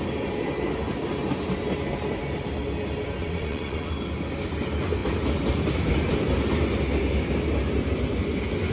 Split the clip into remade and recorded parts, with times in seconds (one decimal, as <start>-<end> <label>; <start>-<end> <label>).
0.0-3.2 recorded; 3.2-3.9 remade; 3.9-8.7 recorded